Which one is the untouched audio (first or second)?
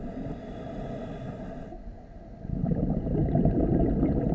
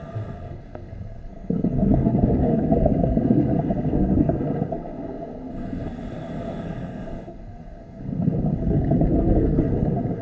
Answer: first